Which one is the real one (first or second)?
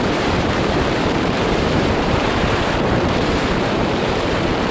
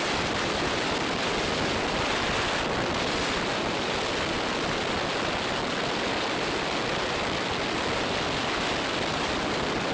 second